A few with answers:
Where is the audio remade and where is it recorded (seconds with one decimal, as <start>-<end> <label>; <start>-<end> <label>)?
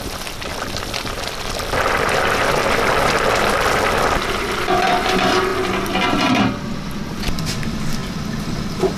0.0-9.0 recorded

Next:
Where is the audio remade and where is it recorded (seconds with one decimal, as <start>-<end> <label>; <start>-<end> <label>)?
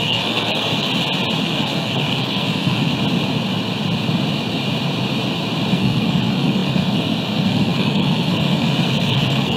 0.0-0.9 remade; 0.9-1.4 recorded; 1.4-2.9 remade; 2.9-5.7 recorded; 5.7-9.6 remade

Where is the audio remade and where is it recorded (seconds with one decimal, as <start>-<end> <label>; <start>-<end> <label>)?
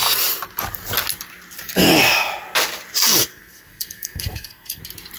0.0-3.3 recorded; 3.3-4.8 remade; 4.8-5.2 recorded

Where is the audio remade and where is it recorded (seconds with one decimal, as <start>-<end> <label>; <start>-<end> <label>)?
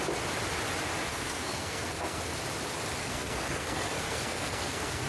0.0-1.1 recorded; 1.1-2.2 remade; 2.2-3.0 recorded; 3.0-5.1 remade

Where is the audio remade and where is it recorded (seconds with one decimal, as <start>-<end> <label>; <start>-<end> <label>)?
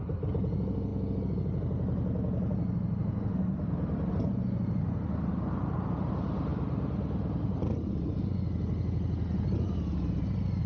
0.0-10.7 recorded